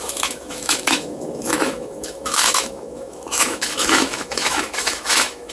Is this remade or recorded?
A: remade